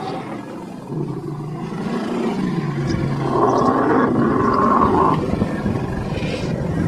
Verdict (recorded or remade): recorded